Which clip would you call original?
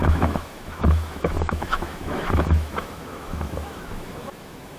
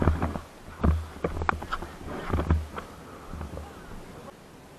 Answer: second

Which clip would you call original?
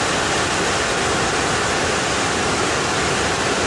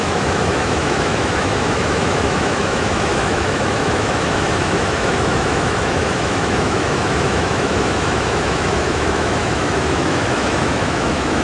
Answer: first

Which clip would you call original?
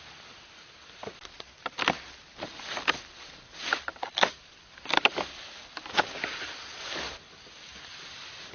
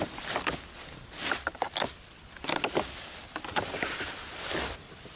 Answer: first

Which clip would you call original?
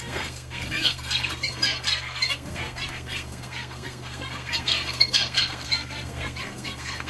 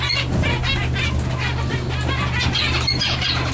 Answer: second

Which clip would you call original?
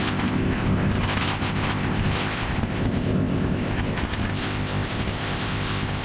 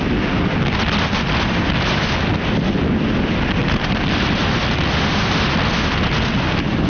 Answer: second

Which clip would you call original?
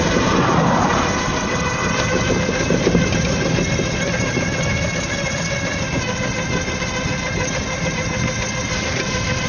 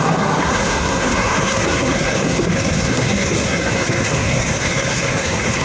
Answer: first